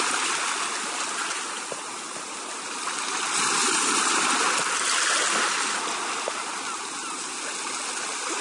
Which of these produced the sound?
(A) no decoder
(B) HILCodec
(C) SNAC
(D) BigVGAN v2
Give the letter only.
A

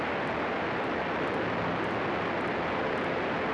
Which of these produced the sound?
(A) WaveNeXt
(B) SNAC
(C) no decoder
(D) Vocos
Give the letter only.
C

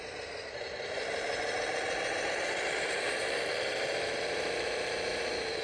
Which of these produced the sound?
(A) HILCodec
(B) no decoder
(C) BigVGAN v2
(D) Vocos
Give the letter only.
C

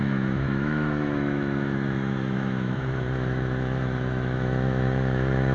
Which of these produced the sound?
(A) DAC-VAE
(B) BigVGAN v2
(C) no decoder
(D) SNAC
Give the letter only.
A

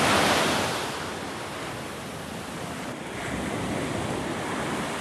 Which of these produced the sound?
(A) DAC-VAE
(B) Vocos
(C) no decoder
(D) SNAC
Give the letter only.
C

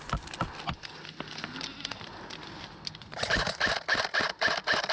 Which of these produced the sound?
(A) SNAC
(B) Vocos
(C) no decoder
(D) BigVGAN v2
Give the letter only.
C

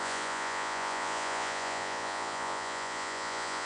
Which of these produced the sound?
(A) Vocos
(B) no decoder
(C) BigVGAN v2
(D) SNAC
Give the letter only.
A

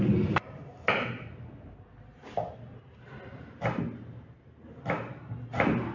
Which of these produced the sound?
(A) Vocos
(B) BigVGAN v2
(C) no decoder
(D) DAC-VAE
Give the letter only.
C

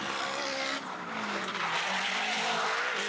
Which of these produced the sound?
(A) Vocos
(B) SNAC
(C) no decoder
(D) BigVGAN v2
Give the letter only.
C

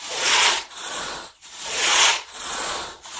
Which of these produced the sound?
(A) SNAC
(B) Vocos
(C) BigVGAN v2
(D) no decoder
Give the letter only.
B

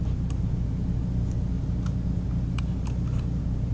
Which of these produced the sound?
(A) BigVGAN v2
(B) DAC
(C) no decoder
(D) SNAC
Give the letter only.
C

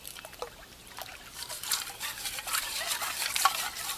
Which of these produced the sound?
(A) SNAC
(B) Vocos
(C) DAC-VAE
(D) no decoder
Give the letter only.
D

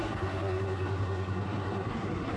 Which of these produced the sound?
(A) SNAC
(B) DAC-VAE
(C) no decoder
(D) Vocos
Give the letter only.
A